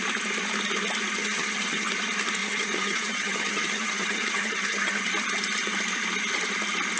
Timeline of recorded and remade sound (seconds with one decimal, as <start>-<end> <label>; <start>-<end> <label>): 0.0-1.2 recorded; 1.2-1.9 remade; 1.9-2.4 recorded; 2.4-5.0 remade; 5.0-7.0 recorded